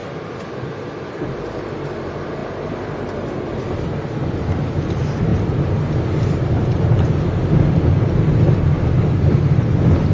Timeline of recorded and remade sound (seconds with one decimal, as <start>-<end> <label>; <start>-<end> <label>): 0.0-10.1 recorded